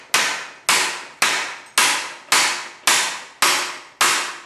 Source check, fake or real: real